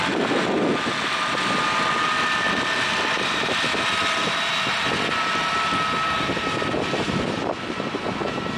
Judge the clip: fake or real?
real